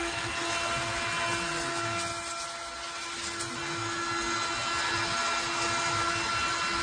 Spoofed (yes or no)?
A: no